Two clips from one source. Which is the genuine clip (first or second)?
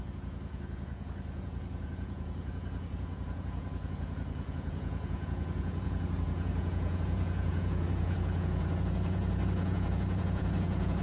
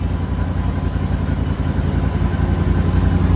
second